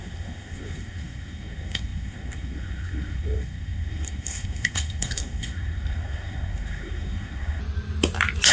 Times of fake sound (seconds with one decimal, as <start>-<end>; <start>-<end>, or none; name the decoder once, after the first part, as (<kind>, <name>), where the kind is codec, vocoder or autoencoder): 0.0-7.6 (codec, SNAC)